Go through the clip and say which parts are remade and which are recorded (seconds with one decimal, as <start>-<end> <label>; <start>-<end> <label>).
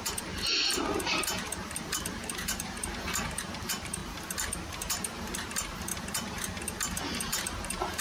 0.0-4.0 remade; 4.0-4.7 recorded; 4.7-5.9 remade; 5.9-7.3 recorded; 7.3-8.0 remade